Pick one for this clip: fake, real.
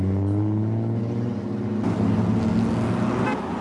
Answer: real